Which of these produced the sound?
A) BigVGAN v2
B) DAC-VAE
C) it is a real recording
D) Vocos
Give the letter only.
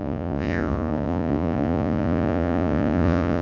D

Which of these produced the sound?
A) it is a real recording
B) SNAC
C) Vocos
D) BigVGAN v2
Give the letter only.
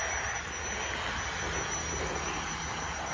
A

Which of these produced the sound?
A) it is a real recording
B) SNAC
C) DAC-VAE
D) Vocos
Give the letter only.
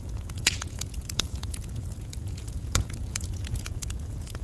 D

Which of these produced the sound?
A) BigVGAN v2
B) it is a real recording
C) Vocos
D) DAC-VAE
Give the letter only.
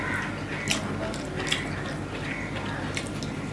B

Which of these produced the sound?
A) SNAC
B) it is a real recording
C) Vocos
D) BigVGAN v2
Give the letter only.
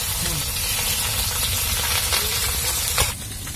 B